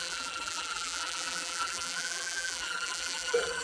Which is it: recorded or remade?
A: remade